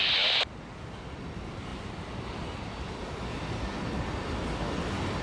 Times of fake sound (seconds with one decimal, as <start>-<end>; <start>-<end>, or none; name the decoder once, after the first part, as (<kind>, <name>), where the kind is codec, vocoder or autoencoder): 1.7-2.8 (vocoder, BigVGAN v2)